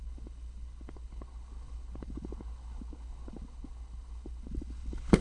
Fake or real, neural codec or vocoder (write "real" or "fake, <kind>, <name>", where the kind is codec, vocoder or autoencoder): fake, codec, HILCodec